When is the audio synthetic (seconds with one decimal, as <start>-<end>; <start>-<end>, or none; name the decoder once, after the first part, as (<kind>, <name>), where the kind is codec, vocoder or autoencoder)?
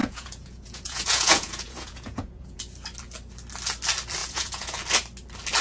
0.0-2.6 (vocoder, Vocos); 4.2-4.8